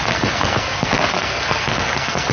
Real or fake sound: fake